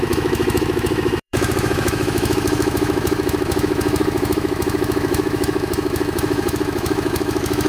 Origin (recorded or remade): remade